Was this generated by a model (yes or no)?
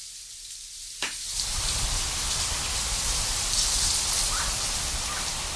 yes